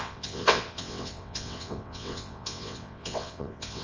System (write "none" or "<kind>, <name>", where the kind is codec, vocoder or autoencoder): vocoder, WaveNeXt